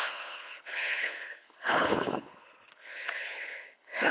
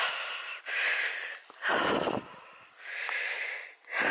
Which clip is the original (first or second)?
second